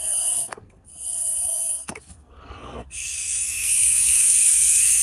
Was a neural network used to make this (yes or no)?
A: yes